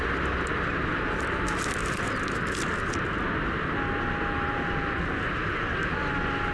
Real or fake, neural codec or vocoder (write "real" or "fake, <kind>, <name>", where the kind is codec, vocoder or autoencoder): real